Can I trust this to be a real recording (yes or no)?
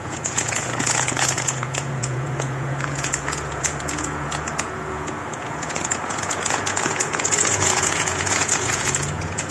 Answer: no